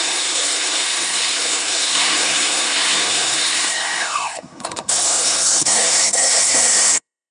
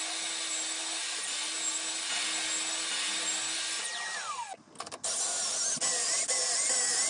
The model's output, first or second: first